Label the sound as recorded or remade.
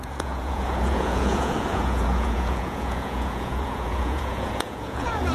remade